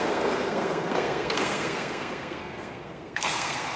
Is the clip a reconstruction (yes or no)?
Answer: yes